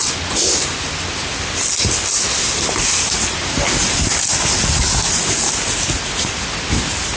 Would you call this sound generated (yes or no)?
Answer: no